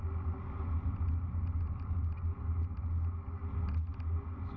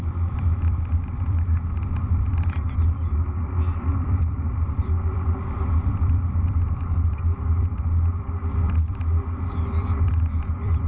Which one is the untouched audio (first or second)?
first